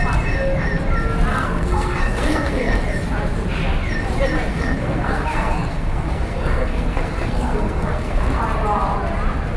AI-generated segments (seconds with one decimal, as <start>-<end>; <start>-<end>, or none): 1.3-2.8; 4.5-8.4